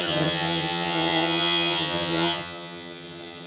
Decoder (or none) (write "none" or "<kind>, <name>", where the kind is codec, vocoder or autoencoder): vocoder, HiFi-GAN